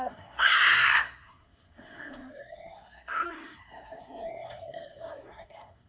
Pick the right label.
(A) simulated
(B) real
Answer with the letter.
A